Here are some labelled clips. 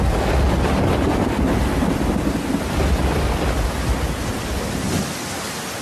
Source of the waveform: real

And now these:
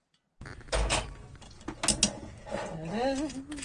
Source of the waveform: real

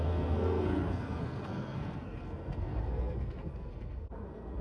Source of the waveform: fake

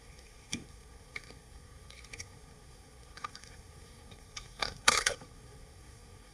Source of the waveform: fake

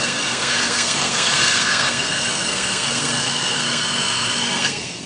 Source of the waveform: fake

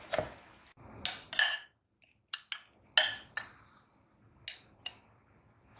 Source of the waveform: real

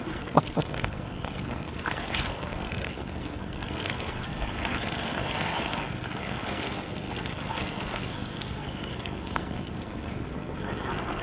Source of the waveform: fake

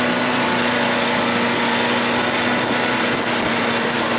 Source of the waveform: real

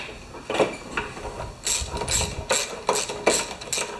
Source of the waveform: real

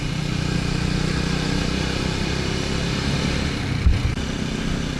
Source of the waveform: real